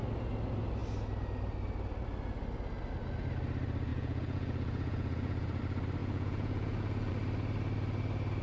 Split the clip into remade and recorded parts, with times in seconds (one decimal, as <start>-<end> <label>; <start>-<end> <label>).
0.0-3.9 recorded; 3.9-5.6 remade; 5.6-6.0 recorded; 6.0-7.1 remade; 7.1-8.4 recorded